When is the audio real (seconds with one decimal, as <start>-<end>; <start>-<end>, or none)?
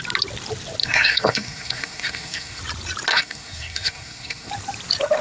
0.0-0.8; 2.6-3.1; 4.5-5.2